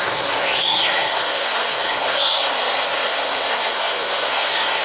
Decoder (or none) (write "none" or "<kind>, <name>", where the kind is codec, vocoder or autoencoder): codec, SNAC